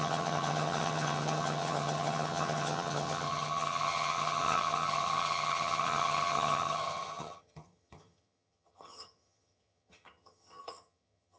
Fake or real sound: fake